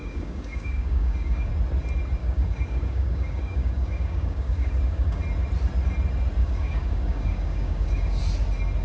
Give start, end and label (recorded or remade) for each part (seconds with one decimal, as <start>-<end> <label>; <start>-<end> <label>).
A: 0.0-1.5 remade; 1.5-2.2 recorded; 2.2-5.2 remade; 5.2-6.4 recorded; 6.4-8.2 remade; 8.2-8.8 recorded